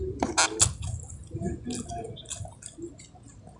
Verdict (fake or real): real